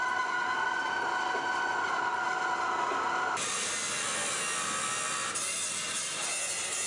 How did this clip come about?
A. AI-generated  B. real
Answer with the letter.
B